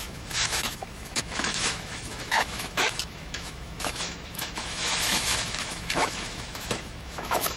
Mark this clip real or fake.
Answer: fake